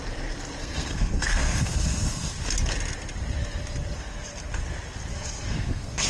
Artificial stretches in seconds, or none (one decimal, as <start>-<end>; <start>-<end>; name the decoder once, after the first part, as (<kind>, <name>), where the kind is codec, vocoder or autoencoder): 0.6-2.3 (codec, SNAC); 5.1-6.1